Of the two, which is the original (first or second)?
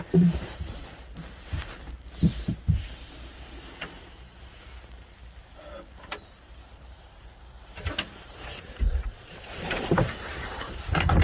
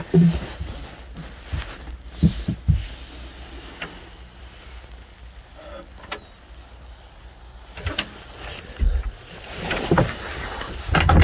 second